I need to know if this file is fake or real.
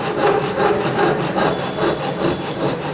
real